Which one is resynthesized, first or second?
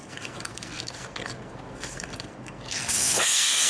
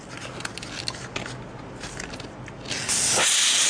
first